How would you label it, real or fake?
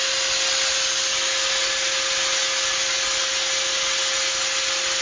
real